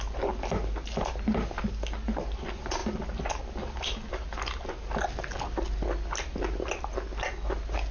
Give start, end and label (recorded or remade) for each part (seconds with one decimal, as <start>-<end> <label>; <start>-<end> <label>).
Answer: 0.0-7.9 recorded